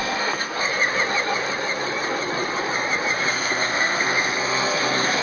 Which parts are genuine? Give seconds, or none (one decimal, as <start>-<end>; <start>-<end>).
0.7-3.3